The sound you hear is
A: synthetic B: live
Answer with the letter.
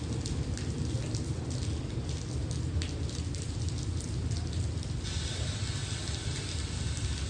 B